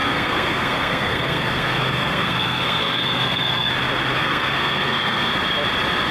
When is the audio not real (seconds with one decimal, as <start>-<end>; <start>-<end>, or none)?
0.0-3.7; 4.2-5.3